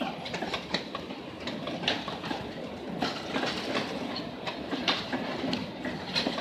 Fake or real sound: fake